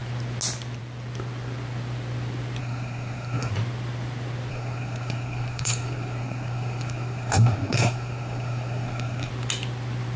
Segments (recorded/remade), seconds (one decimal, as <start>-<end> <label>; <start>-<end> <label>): 0.0-2.6 recorded; 2.6-3.5 remade; 3.5-4.5 recorded; 4.5-9.3 remade; 9.3-10.2 recorded

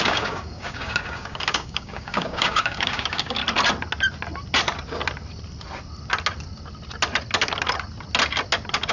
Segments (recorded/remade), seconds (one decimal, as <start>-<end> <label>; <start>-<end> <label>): 0.0-3.4 remade; 3.4-8.9 recorded

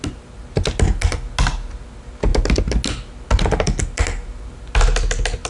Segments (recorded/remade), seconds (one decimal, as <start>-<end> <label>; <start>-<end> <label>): 0.0-5.5 recorded

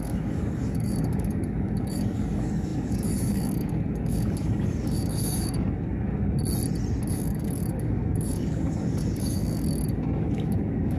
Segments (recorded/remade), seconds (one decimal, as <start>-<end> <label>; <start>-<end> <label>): 0.0-6.4 remade; 6.4-7.1 recorded; 7.1-11.0 remade

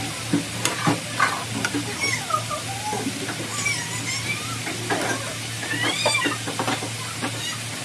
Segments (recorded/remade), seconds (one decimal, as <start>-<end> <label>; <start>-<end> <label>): 0.0-7.8 recorded

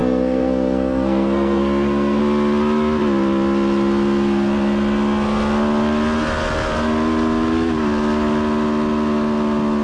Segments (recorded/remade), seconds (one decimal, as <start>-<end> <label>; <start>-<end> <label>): 0.0-2.2 remade; 2.2-9.8 recorded

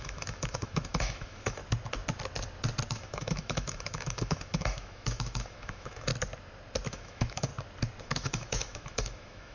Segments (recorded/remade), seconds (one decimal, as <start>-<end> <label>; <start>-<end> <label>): 0.0-1.6 remade; 1.6-2.9 recorded; 2.9-6.1 remade; 6.1-6.9 recorded; 6.9-7.5 remade; 7.5-8.0 recorded; 8.0-9.5 remade